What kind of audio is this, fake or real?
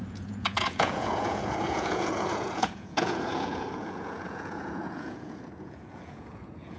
fake